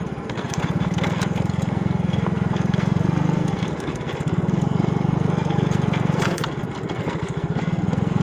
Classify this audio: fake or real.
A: fake